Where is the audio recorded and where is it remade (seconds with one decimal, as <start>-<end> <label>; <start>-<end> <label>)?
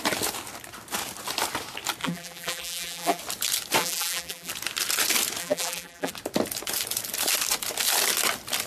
0.0-2.0 recorded; 2.0-3.2 remade; 3.2-3.8 recorded; 3.8-4.5 remade; 4.5-5.4 recorded; 5.4-6.1 remade; 6.1-8.7 recorded